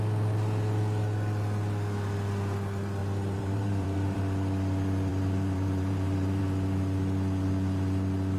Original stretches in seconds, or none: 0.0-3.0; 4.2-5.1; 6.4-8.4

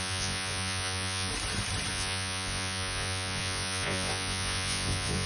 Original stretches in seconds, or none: 1.3-1.9

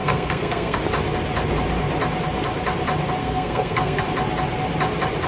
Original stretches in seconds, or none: 0.8-3.2; 4.0-5.3

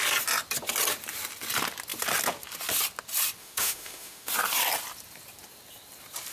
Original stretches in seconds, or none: 0.0-3.4; 4.3-6.3

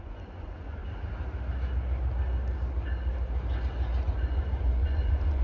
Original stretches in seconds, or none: 0.8-4.0

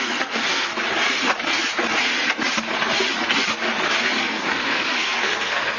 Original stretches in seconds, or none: 0.7-4.2

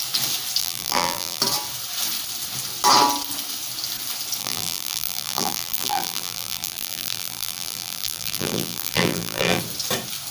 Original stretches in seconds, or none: 0.0-0.6; 1.4-4.4; 9.6-10.3

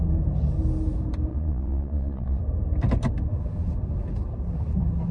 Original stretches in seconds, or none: 0.0-1.3; 2.4-5.1